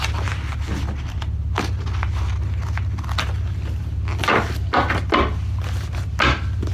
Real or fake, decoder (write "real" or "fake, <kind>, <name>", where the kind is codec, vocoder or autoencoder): real